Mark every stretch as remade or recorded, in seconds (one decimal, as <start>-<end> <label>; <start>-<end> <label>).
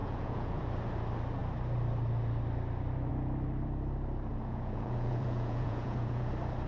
0.0-0.6 remade; 0.6-4.3 recorded; 4.3-6.3 remade; 6.3-6.7 recorded